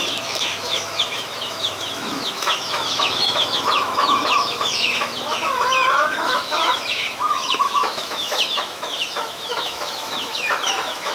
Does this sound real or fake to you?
fake